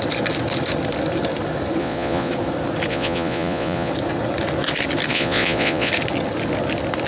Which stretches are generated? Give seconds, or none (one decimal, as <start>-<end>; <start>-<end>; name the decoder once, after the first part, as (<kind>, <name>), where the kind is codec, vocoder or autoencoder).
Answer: 1.8-2.3 (vocoder, Vocos); 2.9-3.9; 5.1-5.9